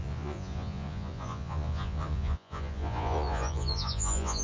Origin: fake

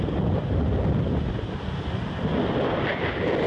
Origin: real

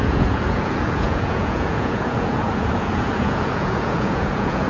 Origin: fake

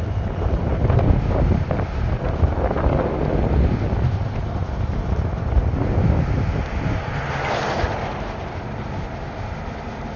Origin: real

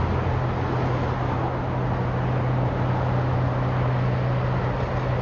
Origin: real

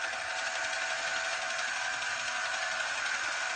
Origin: real